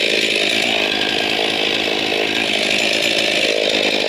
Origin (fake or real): real